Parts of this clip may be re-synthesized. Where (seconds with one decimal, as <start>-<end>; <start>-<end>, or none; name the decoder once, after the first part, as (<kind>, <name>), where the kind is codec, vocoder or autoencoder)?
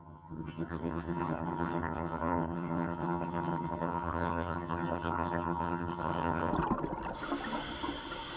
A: 0.0-6.5 (vocoder, HiFi-GAN)